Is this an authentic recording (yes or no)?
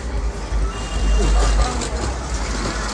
yes